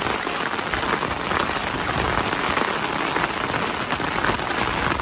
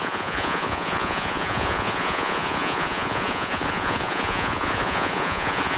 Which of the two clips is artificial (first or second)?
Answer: second